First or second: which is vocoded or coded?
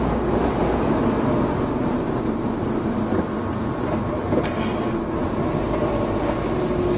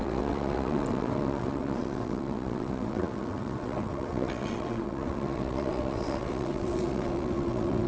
second